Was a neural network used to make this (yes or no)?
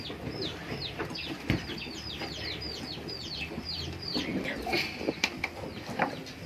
yes